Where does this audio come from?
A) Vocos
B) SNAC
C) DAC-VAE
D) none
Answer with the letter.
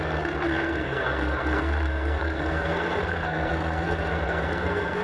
B